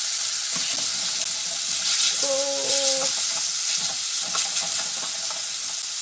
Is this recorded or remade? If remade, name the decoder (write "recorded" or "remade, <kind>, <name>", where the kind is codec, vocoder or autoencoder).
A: recorded